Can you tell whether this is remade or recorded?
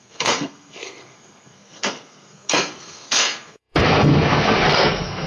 remade